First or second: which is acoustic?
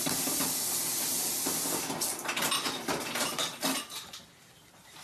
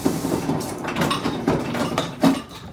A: first